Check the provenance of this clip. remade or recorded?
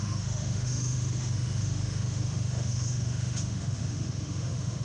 remade